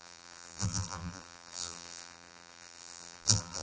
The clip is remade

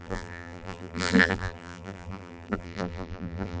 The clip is remade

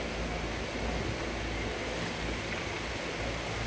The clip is recorded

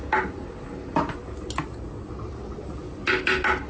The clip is recorded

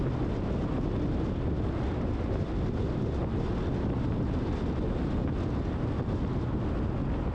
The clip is recorded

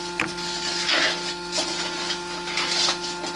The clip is recorded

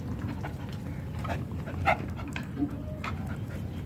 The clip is recorded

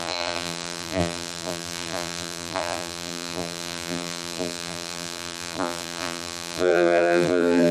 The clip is remade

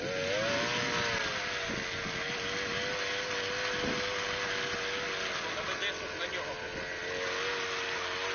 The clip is recorded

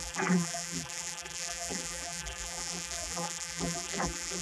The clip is remade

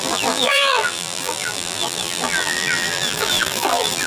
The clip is remade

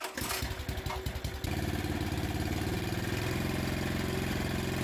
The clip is recorded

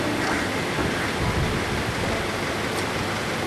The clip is recorded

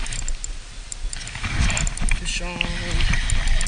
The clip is recorded